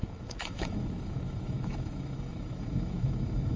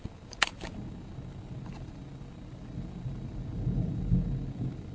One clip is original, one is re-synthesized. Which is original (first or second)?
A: second